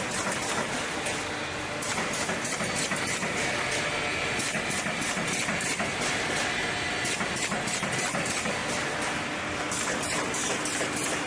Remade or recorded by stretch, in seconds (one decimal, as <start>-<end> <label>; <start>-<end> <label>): 0.0-11.3 recorded